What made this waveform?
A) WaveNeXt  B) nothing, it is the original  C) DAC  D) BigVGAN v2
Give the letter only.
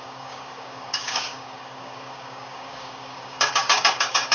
C